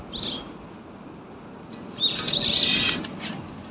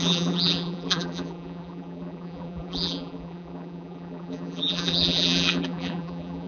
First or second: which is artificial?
second